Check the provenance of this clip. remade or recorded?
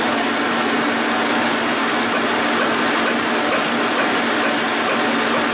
recorded